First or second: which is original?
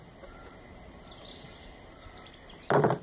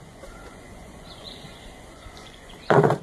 first